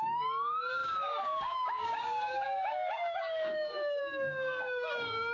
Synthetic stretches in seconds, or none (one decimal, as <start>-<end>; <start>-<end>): 0.0-5.3